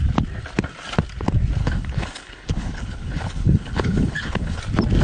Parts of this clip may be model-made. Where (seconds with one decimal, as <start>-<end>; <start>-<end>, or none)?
1.6-4.6